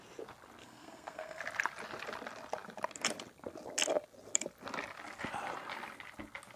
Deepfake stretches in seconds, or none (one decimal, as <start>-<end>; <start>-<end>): 0.6-1.4

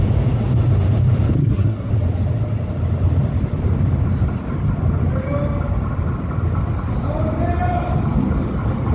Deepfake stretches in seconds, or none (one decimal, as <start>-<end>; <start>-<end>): 1.4-1.9

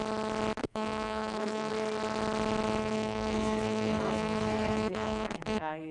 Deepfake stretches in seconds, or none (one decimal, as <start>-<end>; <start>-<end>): 0.6-1.7; 2.8-5.9

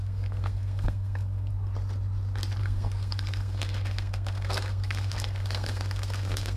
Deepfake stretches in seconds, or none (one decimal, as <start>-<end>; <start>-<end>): 0.0-1.5; 2.6-6.6

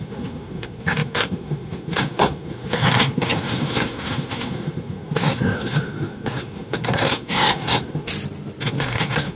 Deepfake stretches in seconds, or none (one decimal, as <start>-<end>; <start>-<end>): 0.0-8.1; 8.6-9.4

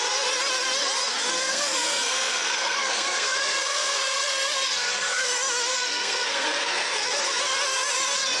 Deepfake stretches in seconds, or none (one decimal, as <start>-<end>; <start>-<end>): 1.3-5.3; 5.7-7.4

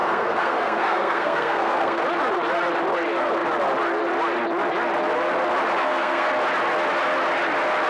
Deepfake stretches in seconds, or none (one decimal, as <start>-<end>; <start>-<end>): 0.0-2.0; 5.8-6.3

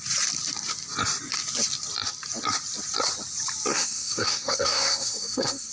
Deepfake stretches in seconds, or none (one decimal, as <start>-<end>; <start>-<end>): 3.7-5.7